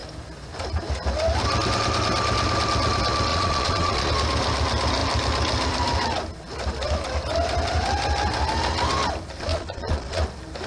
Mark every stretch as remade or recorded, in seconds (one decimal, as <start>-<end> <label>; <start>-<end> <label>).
0.0-3.3 recorded; 3.3-4.1 remade; 4.1-9.5 recorded; 9.5-10.2 remade; 10.2-10.7 recorded